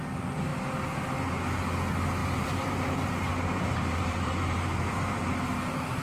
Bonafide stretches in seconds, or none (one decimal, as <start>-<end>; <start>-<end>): 0.0-2.2; 5.3-6.0